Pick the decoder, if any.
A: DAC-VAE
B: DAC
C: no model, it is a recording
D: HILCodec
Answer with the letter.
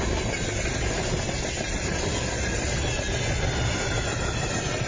C